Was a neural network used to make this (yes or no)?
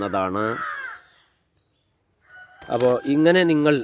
no